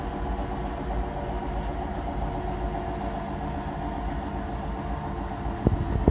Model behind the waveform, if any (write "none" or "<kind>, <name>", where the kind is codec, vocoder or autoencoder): none